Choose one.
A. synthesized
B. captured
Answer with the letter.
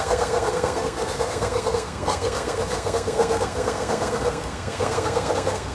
A